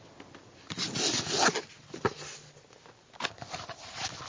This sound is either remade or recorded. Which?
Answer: recorded